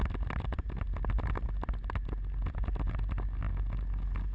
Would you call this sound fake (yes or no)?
no